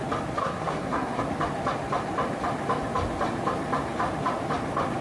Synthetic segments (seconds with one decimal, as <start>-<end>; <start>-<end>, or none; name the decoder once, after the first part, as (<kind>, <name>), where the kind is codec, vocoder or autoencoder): 0.4-1.2 (codec, SNAC)